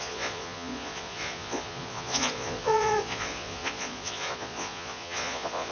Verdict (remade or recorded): remade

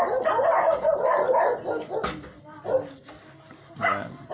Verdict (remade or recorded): recorded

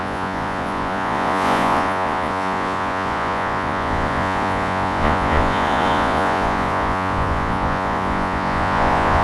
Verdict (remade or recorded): remade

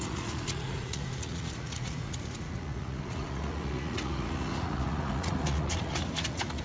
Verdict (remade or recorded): remade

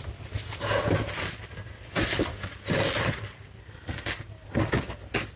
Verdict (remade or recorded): recorded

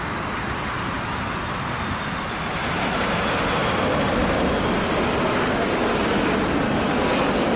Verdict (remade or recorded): recorded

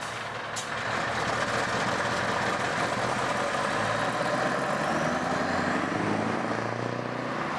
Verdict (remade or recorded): recorded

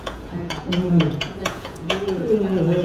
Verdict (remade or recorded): remade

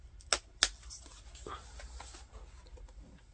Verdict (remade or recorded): recorded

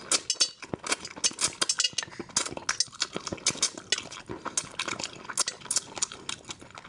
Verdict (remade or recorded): recorded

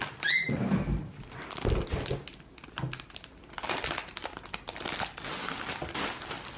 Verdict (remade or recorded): recorded